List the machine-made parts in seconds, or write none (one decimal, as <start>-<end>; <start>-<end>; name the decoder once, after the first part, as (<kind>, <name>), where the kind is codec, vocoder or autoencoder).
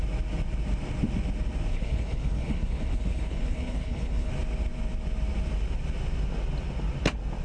1.7-4.3 (codec, HILCodec)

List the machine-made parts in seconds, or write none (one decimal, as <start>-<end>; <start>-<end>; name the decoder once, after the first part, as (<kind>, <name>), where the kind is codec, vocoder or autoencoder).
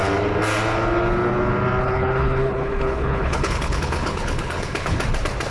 1.8-5.0 (codec, HILCodec)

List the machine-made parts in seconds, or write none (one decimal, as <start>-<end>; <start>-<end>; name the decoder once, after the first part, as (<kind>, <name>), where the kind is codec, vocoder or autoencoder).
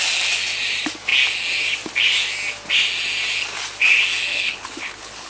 4.3-5.3 (codec, HILCodec)